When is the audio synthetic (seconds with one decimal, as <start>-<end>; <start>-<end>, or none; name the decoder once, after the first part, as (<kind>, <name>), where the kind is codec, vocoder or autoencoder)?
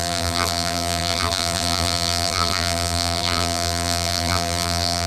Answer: 0.0-5.1 (vocoder, BigVGAN v2)